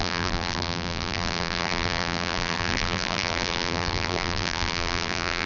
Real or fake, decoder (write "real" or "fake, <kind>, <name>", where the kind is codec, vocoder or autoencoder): fake, vocoder, BigVGAN v2